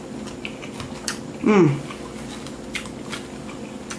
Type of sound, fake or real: real